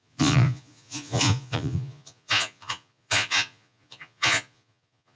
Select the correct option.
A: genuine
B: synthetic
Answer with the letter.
B